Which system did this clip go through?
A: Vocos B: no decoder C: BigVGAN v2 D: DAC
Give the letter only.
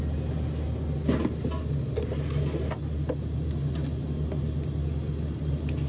B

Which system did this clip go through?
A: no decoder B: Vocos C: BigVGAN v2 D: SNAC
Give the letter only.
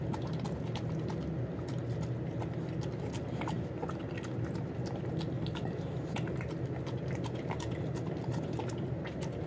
A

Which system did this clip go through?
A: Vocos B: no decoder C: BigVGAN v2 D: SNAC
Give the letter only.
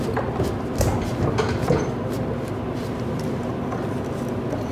B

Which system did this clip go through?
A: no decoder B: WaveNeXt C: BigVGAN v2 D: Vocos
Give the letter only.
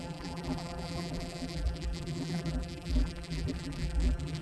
C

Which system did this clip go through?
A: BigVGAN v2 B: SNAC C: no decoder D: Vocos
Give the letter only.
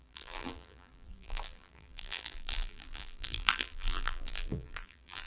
A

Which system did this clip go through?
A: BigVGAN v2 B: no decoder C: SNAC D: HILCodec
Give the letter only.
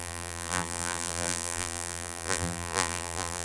A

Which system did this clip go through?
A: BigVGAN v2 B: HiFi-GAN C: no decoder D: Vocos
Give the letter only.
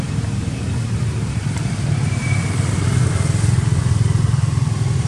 A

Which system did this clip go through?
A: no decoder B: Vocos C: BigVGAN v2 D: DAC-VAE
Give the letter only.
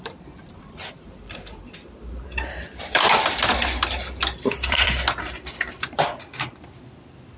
C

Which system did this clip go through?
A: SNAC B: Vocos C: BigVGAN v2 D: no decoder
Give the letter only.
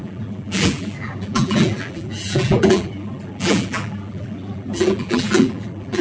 C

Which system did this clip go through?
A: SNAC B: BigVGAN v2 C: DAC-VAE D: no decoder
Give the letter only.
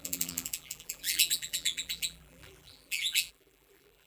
B